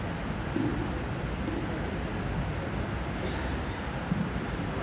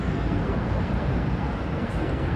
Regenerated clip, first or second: second